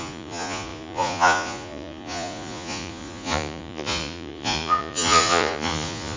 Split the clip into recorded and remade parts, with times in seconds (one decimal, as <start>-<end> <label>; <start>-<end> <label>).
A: 0.0-6.2 remade